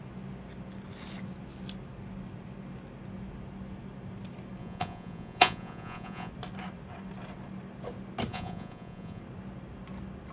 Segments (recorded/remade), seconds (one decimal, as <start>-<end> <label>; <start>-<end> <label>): 0.0-4.6 recorded; 4.6-6.3 remade; 6.3-8.3 recorded; 8.3-9.2 remade; 9.2-10.3 recorded